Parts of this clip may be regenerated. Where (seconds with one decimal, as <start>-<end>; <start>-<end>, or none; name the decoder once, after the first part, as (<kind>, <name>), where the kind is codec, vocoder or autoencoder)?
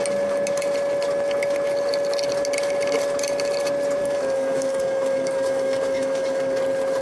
4.0-6.6 (codec, DAC)